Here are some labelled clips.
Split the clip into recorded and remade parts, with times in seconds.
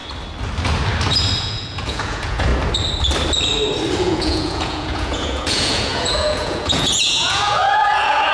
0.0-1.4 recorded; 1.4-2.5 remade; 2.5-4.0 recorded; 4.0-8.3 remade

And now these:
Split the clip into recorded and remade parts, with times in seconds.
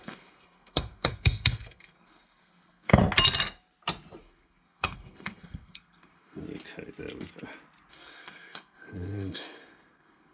0.0-3.0 remade; 3.0-4.2 recorded; 4.2-6.4 remade; 6.4-7.9 recorded; 7.9-10.3 remade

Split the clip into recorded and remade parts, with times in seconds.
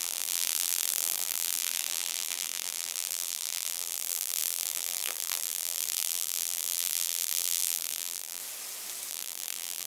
0.0-8.4 remade; 8.4-9.1 recorded; 9.1-9.9 remade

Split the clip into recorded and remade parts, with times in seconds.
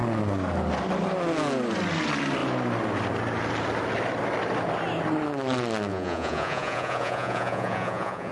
0.0-5.9 recorded; 5.9-8.3 remade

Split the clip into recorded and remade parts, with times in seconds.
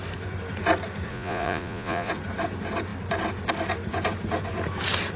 0.0-1.1 recorded; 1.1-2.1 remade; 2.1-5.2 recorded